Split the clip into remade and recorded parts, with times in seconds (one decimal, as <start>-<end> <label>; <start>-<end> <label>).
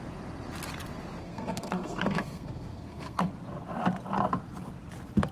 0.0-1.2 recorded; 1.2-3.3 remade; 3.3-5.3 recorded